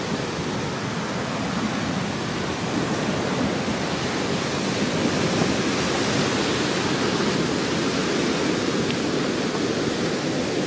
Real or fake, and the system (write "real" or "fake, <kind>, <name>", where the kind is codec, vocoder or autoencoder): real